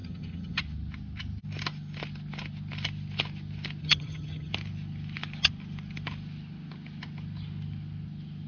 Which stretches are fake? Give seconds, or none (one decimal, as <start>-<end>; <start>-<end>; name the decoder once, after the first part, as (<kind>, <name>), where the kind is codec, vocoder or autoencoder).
0.0-0.6 (vocoder, HiFi-GAN); 3.8-4.5